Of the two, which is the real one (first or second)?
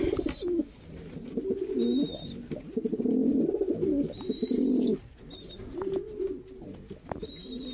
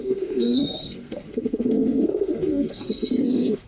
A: first